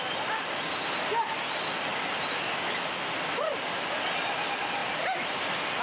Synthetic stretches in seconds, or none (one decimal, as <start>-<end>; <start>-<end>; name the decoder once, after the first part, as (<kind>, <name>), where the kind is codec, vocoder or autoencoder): none